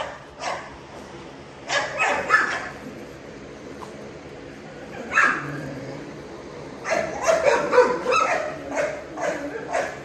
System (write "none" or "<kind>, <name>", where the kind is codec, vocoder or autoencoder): vocoder, BigVGAN v2